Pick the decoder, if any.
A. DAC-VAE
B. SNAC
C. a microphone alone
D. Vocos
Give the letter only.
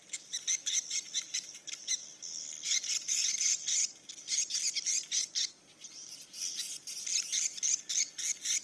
C